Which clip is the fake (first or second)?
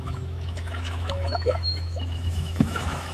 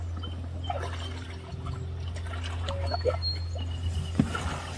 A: first